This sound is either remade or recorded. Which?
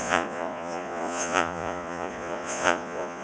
remade